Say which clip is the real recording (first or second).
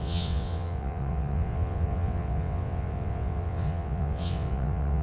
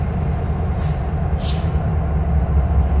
second